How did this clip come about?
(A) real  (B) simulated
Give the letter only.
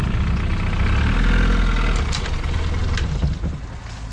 A